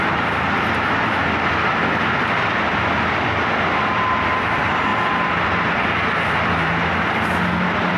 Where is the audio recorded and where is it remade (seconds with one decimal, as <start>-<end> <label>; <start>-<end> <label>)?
0.0-8.0 remade